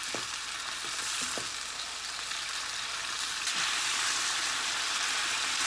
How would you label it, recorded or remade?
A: recorded